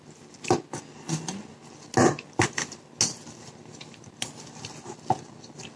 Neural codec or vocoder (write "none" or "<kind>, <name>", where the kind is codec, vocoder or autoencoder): none